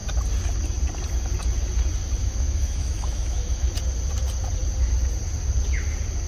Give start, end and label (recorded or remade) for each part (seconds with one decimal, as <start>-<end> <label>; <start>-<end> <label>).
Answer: 0.0-2.2 recorded; 2.2-3.7 remade; 3.7-6.3 recorded